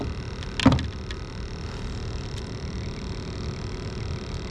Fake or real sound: real